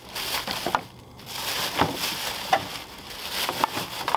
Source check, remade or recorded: recorded